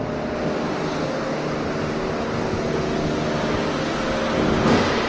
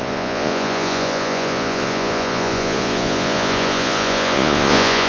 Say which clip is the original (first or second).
first